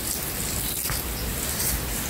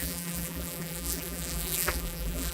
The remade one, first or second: second